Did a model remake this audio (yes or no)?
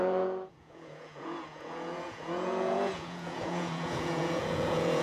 yes